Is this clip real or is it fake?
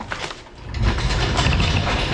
real